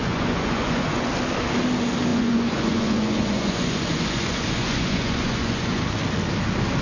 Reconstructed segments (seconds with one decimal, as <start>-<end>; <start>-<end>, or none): 0.0-1.1; 2.1-5.8